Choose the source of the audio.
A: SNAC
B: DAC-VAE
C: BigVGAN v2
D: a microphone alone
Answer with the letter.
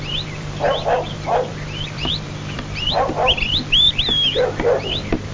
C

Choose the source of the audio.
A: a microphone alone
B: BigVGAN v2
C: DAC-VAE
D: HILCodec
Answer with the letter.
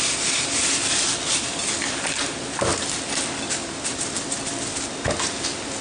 A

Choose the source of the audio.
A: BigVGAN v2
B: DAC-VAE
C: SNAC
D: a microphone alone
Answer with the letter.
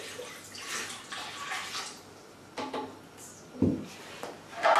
D